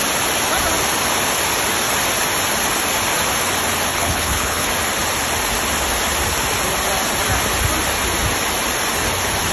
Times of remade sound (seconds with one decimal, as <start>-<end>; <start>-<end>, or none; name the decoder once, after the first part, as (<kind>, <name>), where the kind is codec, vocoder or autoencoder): 3.9-4.7 (codec, HILCodec)